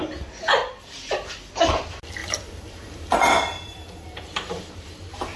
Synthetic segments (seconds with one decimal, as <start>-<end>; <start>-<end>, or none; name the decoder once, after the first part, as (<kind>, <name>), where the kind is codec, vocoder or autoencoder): 2.2-5.4 (vocoder, BigVGAN v2)